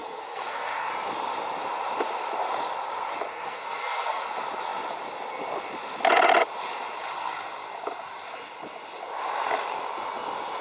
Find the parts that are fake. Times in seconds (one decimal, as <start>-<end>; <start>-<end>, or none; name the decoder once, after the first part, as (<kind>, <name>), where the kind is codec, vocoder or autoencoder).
0.0-0.9 (codec, SNAC); 3.3-4.2